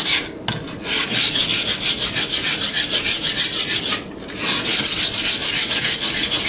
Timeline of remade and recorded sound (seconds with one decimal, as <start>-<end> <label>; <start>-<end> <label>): 0.0-6.5 recorded